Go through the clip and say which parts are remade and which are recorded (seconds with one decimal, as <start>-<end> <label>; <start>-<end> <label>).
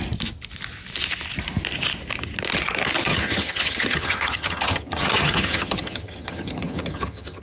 0.0-3.0 recorded; 3.0-7.4 remade